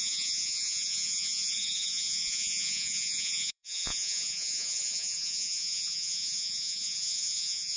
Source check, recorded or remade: remade